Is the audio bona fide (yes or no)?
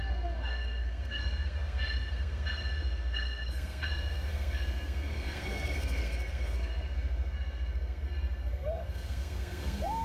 no